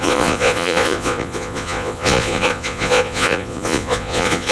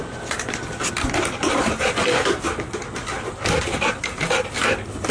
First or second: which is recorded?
second